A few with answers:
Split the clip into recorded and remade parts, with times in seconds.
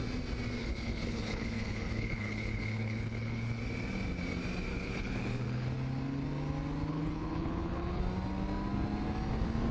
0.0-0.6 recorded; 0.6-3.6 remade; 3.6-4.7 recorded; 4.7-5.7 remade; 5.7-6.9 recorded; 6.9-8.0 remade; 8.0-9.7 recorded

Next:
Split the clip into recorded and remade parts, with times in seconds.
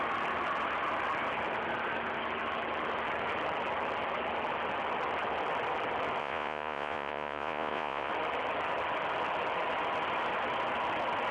0.0-6.2 recorded; 6.2-8.1 remade; 8.1-11.3 recorded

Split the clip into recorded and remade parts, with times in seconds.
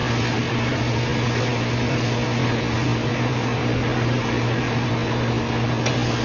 0.0-3.1 recorded; 3.1-4.9 remade; 4.9-6.2 recorded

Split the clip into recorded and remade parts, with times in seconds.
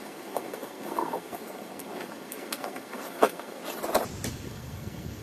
0.0-3.6 remade; 3.6-4.3 recorded; 4.3-5.2 remade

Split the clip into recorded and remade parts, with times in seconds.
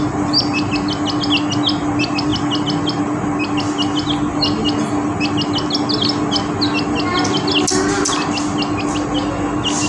0.0-9.9 recorded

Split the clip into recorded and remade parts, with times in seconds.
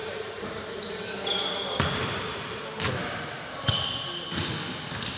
0.0-2.6 remade; 2.6-5.2 recorded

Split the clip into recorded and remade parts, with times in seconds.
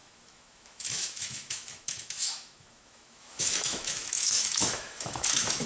0.0-5.7 remade